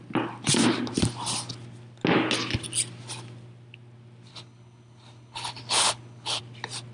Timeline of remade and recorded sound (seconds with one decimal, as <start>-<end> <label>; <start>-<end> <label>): 0.0-4.3 recorded; 4.3-6.4 remade; 6.4-6.9 recorded